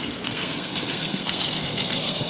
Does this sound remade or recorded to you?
remade